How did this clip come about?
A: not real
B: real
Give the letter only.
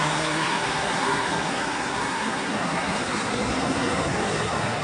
A